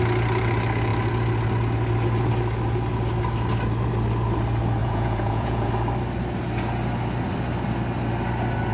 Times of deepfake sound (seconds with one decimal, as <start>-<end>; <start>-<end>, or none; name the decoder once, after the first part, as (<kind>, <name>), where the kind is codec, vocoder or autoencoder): 4.8-5.7 (vocoder, Vocos)